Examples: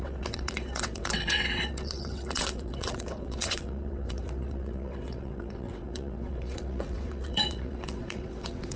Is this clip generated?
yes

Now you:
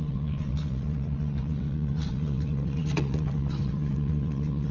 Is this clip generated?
yes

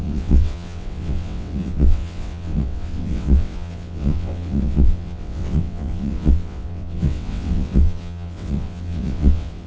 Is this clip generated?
yes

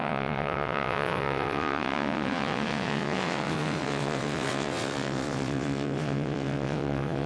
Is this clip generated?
yes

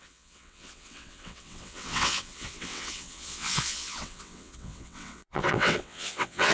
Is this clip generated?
yes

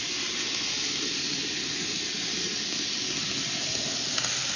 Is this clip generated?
no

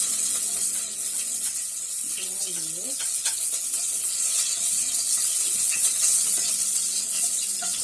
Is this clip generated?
yes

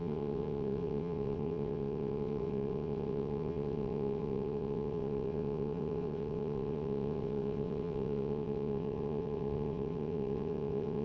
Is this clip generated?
yes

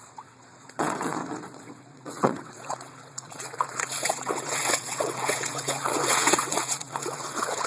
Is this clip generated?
yes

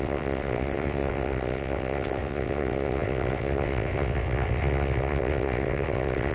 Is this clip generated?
yes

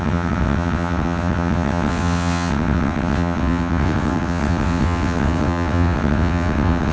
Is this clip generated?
yes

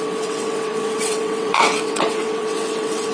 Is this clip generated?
yes